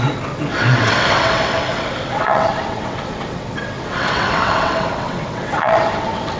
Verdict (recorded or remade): remade